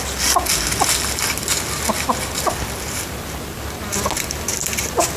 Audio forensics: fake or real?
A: real